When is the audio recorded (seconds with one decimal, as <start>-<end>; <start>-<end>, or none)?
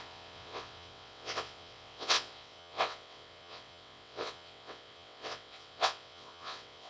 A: none